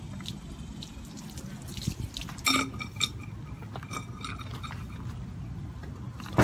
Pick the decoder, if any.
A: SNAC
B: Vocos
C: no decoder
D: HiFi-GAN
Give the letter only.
C